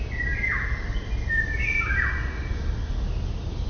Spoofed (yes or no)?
no